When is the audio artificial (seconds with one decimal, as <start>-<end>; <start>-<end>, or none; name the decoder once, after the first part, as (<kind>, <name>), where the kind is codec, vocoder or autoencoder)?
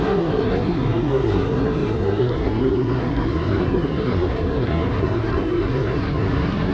0.0-6.7 (codec, SNAC)